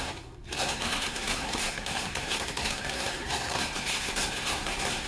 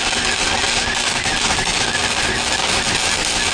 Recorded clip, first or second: second